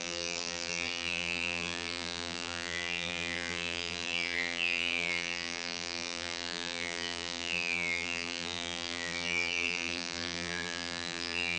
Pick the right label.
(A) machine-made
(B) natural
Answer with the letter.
A